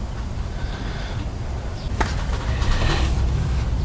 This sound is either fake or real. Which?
real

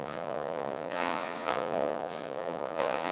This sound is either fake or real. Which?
fake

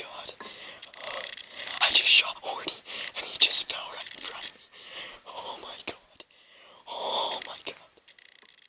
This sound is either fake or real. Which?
real